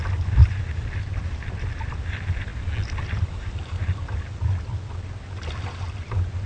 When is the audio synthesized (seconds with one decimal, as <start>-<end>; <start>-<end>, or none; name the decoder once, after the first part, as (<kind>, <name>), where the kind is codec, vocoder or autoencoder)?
none